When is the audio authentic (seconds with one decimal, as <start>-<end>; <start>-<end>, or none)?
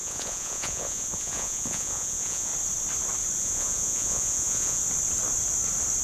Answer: 2.5-3.4; 4.8-6.0